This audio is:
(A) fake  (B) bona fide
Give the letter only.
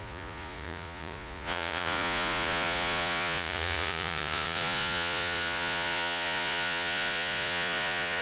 A